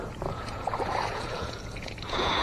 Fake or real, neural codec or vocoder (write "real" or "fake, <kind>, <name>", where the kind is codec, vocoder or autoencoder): fake, vocoder, Vocos